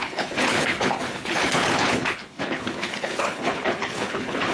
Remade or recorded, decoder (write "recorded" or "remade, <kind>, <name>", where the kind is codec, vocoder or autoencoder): remade, codec, HILCodec